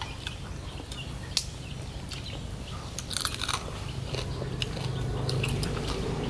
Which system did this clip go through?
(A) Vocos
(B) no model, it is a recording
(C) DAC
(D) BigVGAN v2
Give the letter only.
B